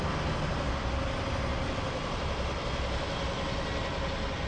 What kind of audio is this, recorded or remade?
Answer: recorded